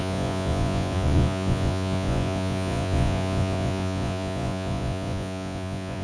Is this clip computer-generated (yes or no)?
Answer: yes